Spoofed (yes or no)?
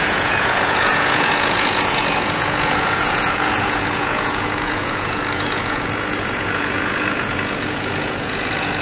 yes